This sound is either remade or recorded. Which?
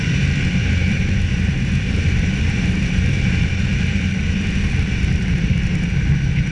remade